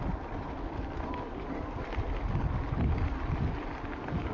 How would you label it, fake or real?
real